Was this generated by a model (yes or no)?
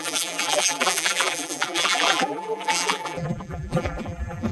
yes